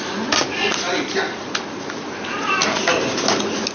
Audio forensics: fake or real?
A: real